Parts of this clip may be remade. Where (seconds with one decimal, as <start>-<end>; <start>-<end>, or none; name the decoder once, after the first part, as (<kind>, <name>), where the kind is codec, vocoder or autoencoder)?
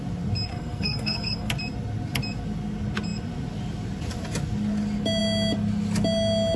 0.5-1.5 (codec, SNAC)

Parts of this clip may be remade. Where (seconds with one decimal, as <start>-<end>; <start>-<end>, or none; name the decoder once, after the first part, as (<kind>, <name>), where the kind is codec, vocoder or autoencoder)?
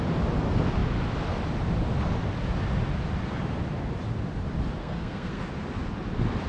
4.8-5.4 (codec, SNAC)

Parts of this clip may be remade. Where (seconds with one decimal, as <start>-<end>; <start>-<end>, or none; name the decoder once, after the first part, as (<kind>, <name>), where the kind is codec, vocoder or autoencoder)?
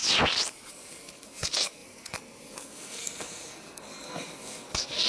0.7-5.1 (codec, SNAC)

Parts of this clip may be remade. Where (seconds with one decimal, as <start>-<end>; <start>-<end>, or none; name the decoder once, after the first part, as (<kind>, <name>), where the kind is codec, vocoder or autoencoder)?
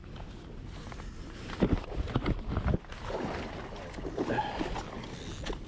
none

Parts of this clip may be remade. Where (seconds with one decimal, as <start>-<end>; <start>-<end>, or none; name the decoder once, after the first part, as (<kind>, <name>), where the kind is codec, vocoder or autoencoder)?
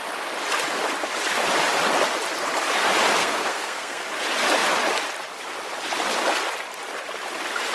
3.2-4.1 (codec, SNAC)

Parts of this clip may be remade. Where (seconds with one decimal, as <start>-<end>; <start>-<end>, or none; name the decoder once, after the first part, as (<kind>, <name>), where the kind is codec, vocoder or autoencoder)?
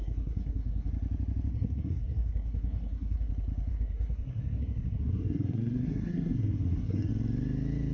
0.0-0.9 (codec, SNAC); 1.5-3.3; 3.7-7.1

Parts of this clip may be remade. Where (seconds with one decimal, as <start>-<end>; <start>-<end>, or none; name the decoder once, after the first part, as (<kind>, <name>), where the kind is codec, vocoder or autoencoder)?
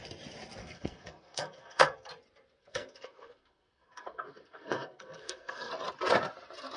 0.6-2.1 (codec, SNAC); 2.6-5.7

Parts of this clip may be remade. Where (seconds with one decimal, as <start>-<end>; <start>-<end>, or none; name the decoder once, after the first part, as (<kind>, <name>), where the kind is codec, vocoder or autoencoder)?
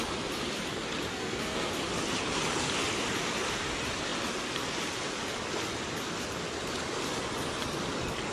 1.1-1.7 (codec, SNAC)